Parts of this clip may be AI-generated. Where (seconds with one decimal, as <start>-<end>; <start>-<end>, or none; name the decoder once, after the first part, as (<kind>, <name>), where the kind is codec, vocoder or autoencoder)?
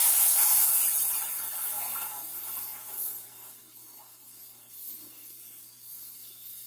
0.0-0.8 (codec, SNAC); 1.3-6.7